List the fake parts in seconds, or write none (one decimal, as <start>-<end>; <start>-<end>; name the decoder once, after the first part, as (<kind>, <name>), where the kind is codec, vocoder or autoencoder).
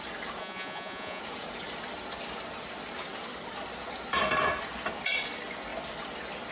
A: 0.4-1.2 (vocoder, Vocos)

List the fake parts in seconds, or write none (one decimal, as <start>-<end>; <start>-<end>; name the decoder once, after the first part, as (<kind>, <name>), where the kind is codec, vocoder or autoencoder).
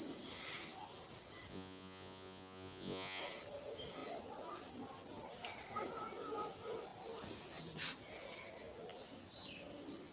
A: 1.5-3.2 (vocoder, Vocos)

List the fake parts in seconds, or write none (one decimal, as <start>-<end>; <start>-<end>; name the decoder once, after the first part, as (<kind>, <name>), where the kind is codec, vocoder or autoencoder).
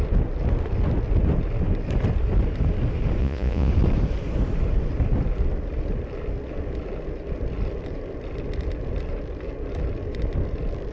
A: 3.2-3.7 (vocoder, Vocos)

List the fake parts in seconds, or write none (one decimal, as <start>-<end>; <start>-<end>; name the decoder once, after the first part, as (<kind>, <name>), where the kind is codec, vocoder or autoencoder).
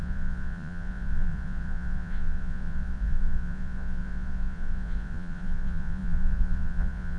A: 0.0-7.2 (vocoder, Vocos)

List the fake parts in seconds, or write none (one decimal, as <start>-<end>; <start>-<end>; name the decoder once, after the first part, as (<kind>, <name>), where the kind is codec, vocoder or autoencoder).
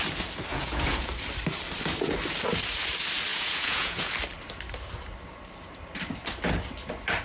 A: 0.5-1.1 (vocoder, Vocos); 3.3-4.1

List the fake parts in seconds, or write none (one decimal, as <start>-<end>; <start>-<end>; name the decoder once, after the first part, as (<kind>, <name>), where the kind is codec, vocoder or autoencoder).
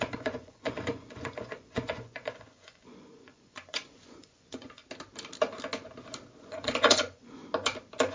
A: 0.0-4.8 (vocoder, Vocos); 6.4-7.4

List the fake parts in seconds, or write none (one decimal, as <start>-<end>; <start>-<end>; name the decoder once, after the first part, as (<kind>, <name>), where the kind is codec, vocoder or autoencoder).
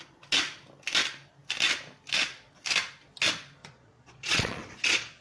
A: 3.6-5.2 (vocoder, Vocos)